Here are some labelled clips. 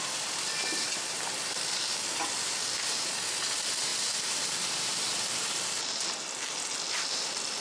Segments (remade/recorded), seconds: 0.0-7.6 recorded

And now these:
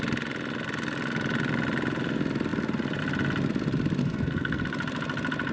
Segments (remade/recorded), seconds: 0.0-4.0 recorded; 4.0-4.6 remade; 4.6-5.5 recorded

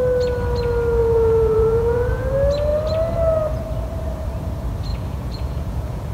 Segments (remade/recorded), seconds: 0.0-1.0 recorded; 1.0-2.3 remade; 2.3-4.9 recorded; 4.9-6.1 remade

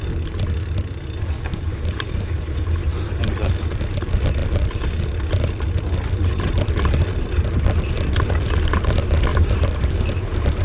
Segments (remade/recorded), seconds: 0.0-1.5 recorded; 1.5-3.2 remade; 3.2-9.3 recorded; 9.3-9.9 remade; 9.9-10.6 recorded

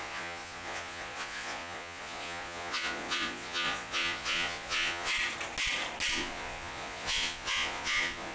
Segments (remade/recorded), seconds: 0.0-5.1 remade; 5.1-6.1 recorded; 6.1-8.3 remade

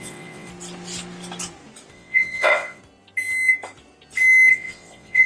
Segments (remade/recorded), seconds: 0.0-0.5 remade; 0.5-1.9 recorded; 1.9-2.8 remade; 2.8-4.5 recorded; 4.5-5.3 remade

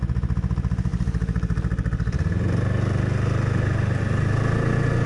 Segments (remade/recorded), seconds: 0.0-5.1 recorded

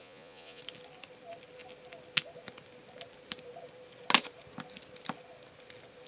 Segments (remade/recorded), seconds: 0.0-0.6 remade; 0.6-6.1 recorded